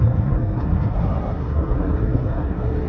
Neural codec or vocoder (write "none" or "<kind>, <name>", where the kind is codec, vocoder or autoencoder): codec, SNAC